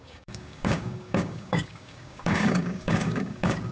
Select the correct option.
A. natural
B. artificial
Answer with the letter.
B